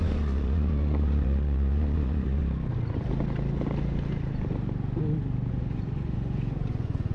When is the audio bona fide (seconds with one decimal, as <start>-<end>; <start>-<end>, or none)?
2.4-5.5